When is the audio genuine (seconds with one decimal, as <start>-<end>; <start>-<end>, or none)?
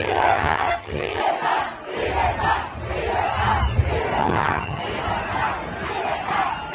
1.2-4.2; 4.8-6.7